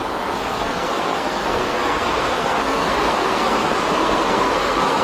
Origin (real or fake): fake